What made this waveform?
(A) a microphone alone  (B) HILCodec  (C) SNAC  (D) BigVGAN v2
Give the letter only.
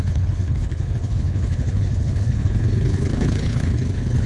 B